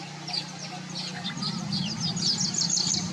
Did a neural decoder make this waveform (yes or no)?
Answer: no